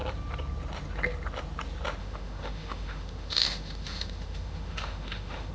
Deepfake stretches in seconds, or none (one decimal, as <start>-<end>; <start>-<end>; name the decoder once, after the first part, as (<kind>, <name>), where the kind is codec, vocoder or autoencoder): 2.0-5.5 (autoencoder, DAC-VAE)

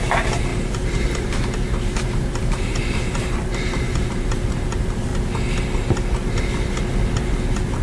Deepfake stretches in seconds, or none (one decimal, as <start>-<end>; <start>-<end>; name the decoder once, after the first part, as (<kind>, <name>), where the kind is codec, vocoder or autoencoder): 0.0-5.1 (vocoder, BigVGAN v2)

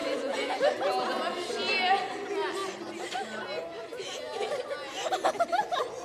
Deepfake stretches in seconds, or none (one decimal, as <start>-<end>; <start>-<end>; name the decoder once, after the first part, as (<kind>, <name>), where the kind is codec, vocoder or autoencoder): 0.0-0.6 (vocoder, Vocos)